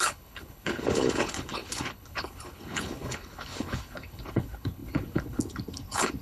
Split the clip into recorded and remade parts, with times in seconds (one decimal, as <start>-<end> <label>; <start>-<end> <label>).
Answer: 0.0-6.2 remade